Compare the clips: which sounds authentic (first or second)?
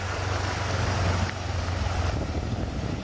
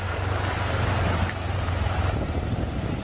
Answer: first